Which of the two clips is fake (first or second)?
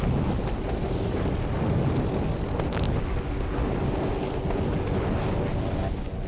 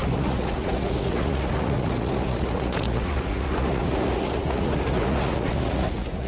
second